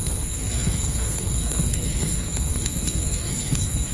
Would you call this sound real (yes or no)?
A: no